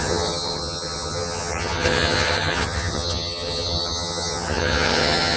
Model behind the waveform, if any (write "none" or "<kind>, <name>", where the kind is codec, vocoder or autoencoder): vocoder, HiFi-GAN